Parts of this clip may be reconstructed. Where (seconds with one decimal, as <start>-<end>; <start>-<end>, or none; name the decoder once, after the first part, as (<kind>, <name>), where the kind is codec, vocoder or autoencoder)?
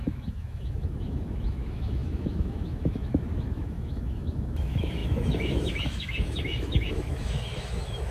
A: 0.0-8.1 (autoencoder, DAC-VAE)